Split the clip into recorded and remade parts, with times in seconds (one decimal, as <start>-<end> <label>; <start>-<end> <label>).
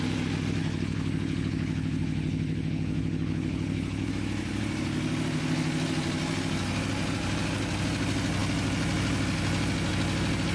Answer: 0.0-0.6 recorded; 0.6-4.1 remade; 4.1-10.5 recorded